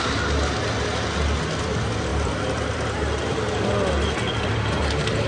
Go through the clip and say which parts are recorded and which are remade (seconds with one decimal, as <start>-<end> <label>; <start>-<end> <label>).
0.0-2.1 recorded; 2.1-4.8 remade; 4.8-5.3 recorded